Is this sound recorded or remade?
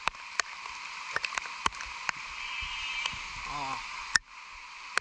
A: recorded